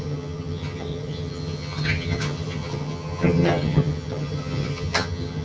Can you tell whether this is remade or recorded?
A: remade